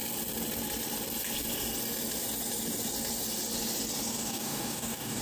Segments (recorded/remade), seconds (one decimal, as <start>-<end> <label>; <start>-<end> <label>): 0.0-4.1 recorded; 4.1-5.2 remade